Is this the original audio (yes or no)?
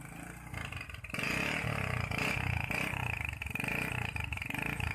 yes